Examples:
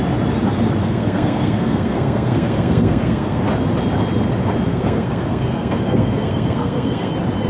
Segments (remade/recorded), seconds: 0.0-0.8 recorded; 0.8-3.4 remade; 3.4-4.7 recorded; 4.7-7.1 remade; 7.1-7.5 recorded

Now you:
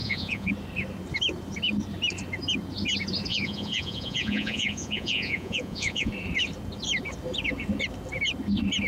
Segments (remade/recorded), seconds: 0.0-0.5 remade; 0.5-3.3 recorded; 3.3-6.1 remade; 6.1-8.9 recorded